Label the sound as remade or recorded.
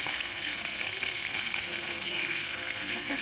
remade